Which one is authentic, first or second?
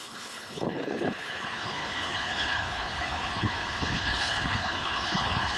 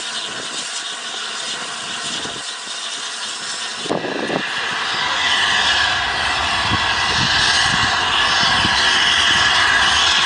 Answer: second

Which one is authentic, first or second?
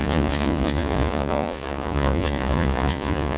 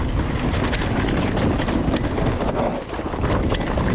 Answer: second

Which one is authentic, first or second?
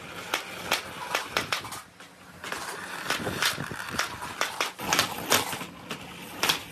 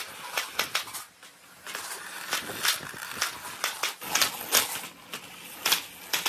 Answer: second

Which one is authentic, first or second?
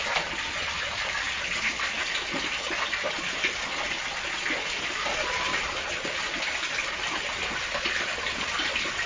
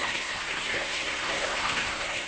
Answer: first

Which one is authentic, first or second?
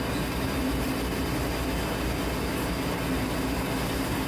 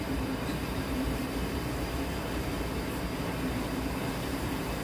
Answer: first